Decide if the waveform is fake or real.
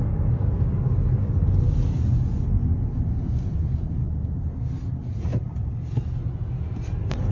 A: real